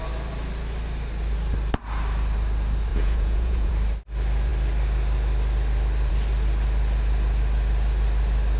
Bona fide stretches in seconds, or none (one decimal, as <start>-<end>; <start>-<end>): 0.0-2.9; 3.7-8.6

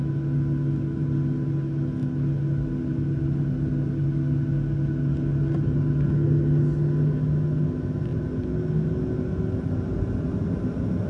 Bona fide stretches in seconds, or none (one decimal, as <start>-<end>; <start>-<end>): 0.0-11.1

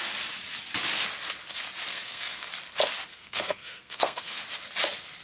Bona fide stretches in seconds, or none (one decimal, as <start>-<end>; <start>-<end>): 0.0-1.9; 2.5-3.1; 4.4-5.2

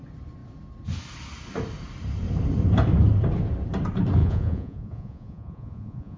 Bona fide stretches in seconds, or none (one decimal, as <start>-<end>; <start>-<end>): 0.0-4.2

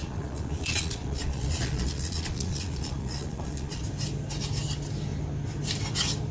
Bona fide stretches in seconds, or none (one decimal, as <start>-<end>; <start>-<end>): 3.8-6.3

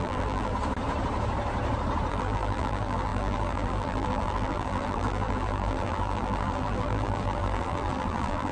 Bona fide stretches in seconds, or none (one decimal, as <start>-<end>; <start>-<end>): 0.5-2.1

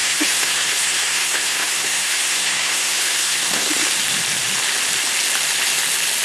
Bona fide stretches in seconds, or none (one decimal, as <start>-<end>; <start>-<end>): 3.7-6.2

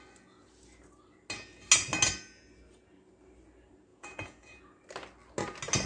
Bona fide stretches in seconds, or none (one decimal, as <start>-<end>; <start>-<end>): 0.0-3.9; 4.6-5.9